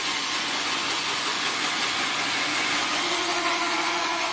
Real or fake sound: fake